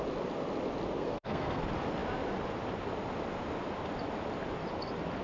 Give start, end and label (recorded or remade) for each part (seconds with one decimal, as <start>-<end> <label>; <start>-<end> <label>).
0.0-1.0 recorded; 1.0-1.6 remade; 1.6-5.2 recorded